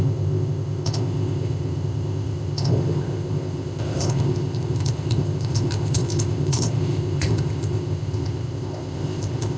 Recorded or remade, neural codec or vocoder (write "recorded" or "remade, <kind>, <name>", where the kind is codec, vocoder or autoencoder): remade, codec, ZipCodec